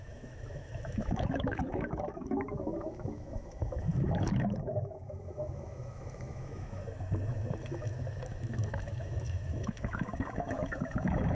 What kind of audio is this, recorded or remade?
remade